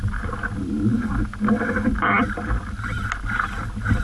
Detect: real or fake real